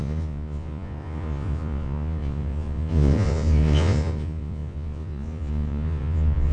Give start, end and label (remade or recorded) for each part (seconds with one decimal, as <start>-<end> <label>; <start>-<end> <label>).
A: 0.0-6.5 remade